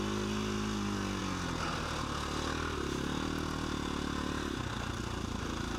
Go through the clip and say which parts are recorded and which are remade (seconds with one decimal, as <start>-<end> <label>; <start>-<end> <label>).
0.0-5.8 recorded